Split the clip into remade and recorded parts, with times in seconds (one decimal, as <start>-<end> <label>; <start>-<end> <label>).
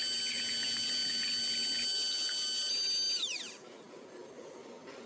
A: 0.0-5.1 recorded